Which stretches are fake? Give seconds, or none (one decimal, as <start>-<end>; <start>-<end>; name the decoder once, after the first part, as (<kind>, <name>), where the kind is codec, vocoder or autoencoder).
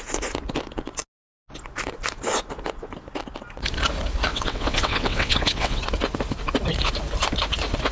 4.3-5.8 (vocoder, WaveNeXt)